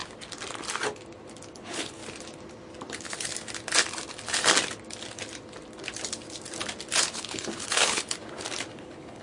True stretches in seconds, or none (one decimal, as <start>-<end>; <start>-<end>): 0.0-1.5; 2.0-2.9; 3.3-7.0; 8.2-8.7